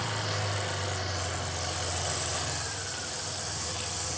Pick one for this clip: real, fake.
real